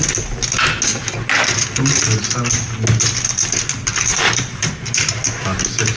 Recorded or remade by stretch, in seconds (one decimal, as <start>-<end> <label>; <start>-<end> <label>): 0.0-4.1 recorded; 4.1-5.2 remade; 5.2-6.0 recorded